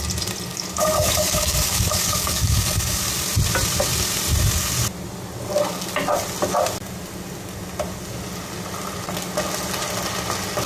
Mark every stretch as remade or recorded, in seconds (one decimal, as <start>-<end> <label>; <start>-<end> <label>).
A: 0.0-0.5 recorded; 0.5-3.0 remade; 3.0-10.7 recorded